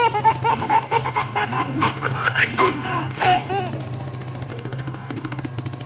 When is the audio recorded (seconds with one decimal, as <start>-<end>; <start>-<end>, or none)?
0.0-0.5; 3.5-4.5; 5.4-5.9